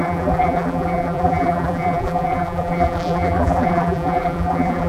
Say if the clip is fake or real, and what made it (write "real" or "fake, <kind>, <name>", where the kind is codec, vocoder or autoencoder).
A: fake, vocoder, BigVGAN v2